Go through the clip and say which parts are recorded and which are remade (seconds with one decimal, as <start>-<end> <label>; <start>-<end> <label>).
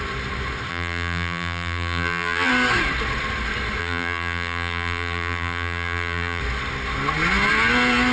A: 0.0-0.7 recorded; 0.7-2.5 remade; 2.5-3.8 recorded; 3.8-6.4 remade; 6.4-8.1 recorded